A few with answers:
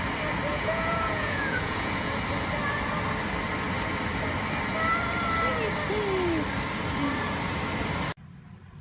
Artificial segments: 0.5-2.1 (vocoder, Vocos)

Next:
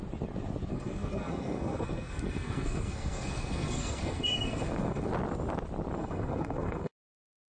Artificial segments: 0.7-5.1 (codec, SNAC); 6.0-7.5

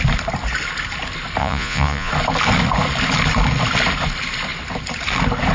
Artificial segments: 1.4-2.1 (vocoder, Vocos)

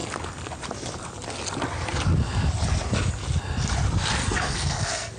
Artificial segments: 4.2-5.2 (codec, SNAC)

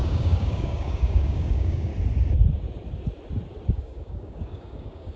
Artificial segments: 0.0-1.9 (codec, DAC); 3.7-5.2

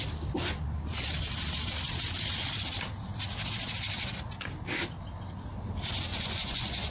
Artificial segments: 6.1-6.9 (vocoder, Vocos)

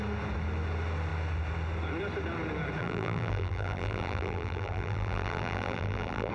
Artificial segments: 2.8-6.3 (vocoder, BigVGAN v2)